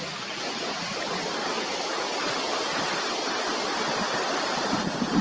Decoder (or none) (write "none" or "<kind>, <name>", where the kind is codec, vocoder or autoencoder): none